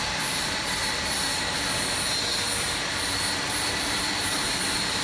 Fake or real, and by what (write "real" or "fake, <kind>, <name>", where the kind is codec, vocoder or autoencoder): fake, vocoder, BigVGAN v2